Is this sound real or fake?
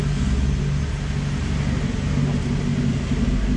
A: real